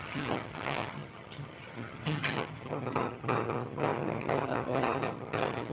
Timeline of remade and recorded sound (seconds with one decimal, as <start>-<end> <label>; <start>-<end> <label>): 0.0-5.7 remade